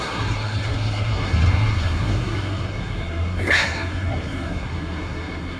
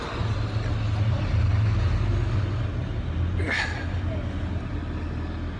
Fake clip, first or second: first